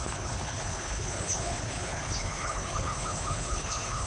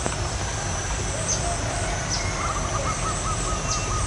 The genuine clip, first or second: second